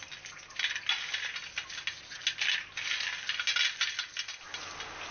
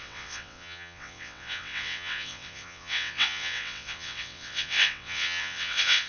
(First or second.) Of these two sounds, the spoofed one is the second